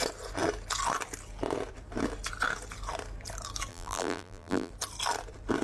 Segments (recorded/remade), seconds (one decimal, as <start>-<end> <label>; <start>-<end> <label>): 0.0-3.7 recorded; 3.7-4.7 remade; 4.7-5.6 recorded